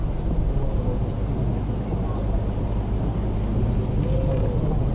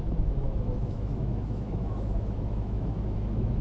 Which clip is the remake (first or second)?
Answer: second